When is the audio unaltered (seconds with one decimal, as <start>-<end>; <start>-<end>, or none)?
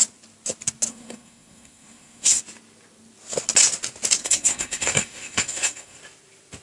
0.0-0.9; 2.4-4.2; 6.0-6.6